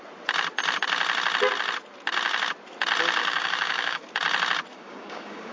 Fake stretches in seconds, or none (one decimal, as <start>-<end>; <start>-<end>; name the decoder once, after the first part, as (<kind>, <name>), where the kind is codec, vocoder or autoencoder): 3.2-4.0 (codec, DAC); 4.7-5.5